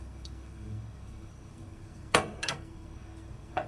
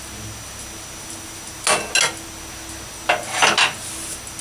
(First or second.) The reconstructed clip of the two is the first